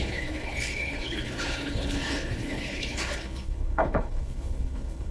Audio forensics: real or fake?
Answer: fake